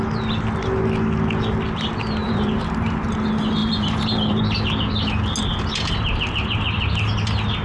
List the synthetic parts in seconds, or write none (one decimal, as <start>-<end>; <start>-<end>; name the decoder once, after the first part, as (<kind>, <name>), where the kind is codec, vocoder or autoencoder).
2.2-3.1 (vocoder, BigVGAN v2); 3.6-4.4